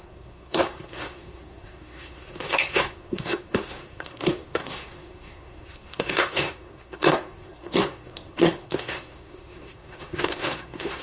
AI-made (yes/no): yes